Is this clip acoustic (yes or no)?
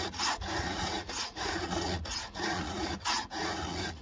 no